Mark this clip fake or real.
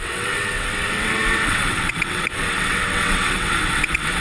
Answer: fake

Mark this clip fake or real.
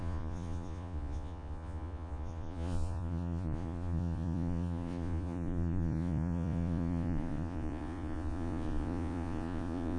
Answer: fake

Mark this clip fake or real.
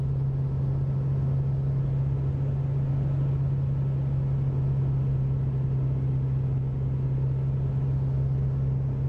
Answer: real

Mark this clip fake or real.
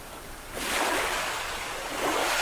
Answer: fake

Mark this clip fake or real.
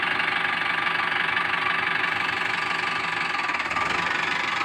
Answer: real